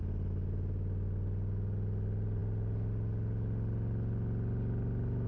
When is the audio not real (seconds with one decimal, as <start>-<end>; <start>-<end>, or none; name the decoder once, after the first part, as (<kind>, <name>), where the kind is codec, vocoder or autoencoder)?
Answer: none